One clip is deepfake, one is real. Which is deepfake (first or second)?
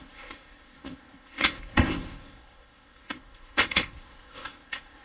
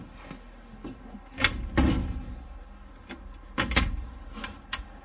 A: first